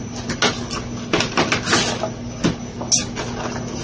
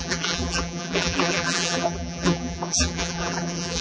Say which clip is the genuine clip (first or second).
first